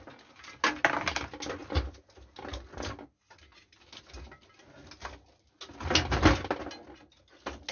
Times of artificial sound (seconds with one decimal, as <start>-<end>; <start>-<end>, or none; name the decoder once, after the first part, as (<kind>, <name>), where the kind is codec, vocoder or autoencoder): none